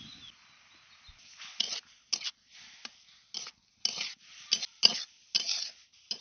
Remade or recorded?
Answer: recorded